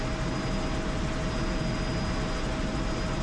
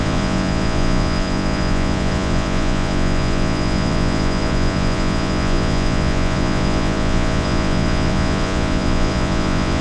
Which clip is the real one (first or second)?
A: first